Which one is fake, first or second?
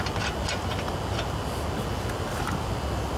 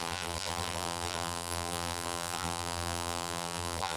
second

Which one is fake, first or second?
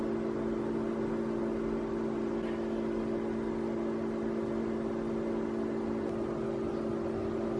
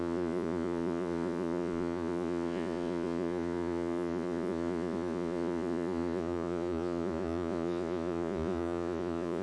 second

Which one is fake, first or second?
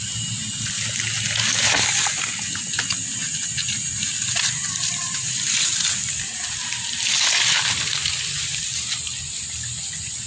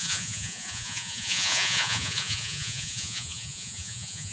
second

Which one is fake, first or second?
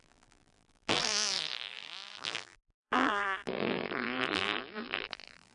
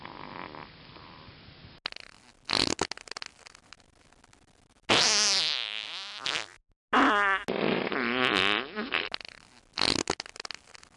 first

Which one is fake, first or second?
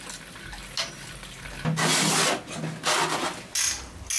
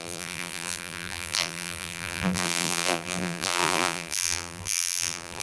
second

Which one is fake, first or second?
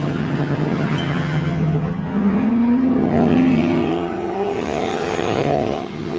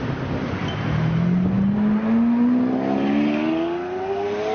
first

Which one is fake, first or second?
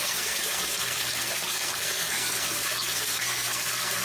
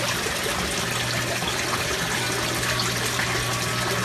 first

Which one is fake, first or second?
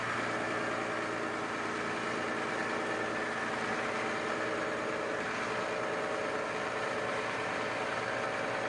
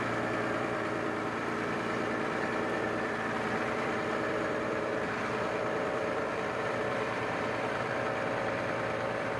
second